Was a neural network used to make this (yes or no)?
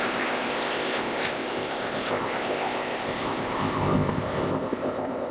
yes